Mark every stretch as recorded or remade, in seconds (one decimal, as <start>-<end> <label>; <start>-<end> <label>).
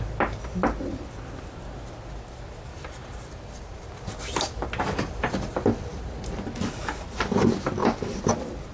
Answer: 0.0-2.7 recorded; 2.7-3.9 remade; 3.9-8.7 recorded